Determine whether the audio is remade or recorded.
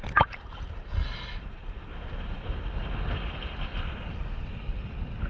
recorded